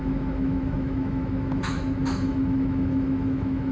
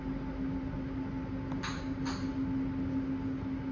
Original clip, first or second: second